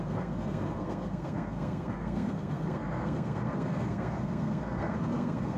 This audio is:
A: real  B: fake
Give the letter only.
B